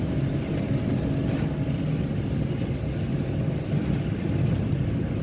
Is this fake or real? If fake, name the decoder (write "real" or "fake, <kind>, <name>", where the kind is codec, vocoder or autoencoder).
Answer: real